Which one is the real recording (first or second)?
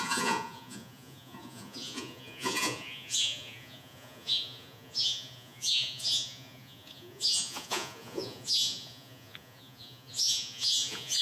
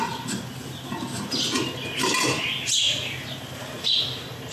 second